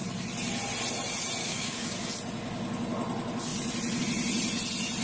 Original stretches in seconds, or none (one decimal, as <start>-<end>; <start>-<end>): 0.0-1.4; 2.1-5.0